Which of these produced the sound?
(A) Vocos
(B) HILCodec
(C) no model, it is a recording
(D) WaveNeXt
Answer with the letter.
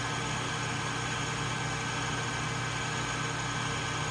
C